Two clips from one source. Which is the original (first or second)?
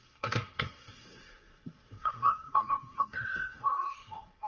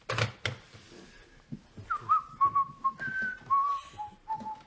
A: second